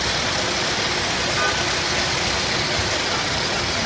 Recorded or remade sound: recorded